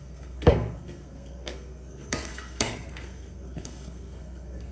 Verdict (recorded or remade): remade